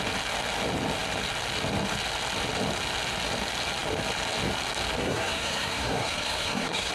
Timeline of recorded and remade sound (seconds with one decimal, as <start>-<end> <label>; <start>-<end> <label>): 0.0-5.0 recorded; 5.0-6.9 remade